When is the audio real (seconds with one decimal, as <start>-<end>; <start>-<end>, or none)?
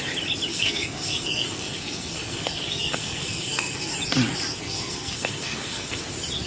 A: 0.0-0.5; 3.9-4.5; 6.0-6.5